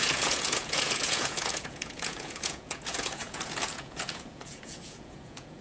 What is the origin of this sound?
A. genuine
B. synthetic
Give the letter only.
B